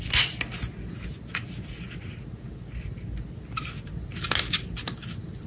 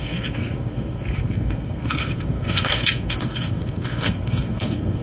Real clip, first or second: first